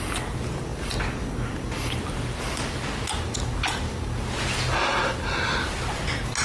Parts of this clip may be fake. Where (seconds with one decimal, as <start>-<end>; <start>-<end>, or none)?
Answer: none